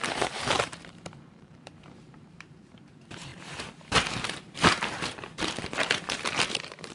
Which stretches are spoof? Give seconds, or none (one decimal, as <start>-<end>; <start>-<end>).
0.0-6.9